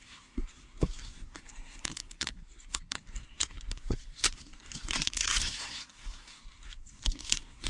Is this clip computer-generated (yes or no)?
yes